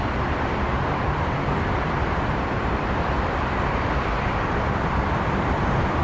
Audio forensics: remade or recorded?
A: remade